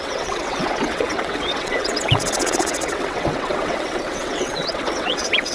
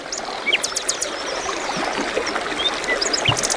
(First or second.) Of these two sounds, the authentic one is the second